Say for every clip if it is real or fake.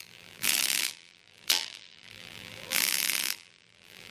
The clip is fake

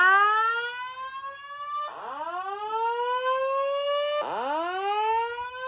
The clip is real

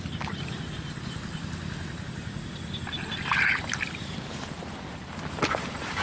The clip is real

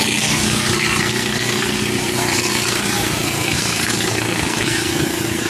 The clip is fake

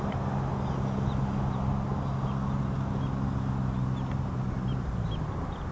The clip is real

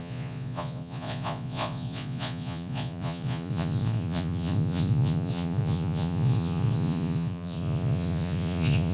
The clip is fake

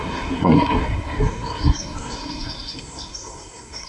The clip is fake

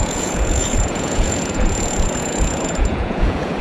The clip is fake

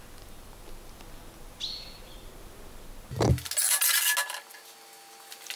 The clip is real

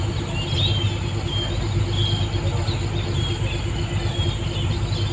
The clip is real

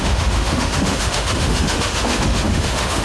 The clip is fake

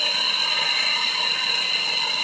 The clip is real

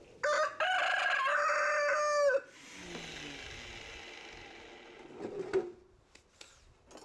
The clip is real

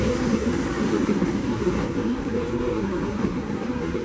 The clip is fake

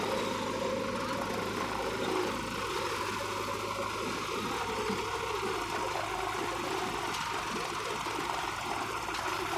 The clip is real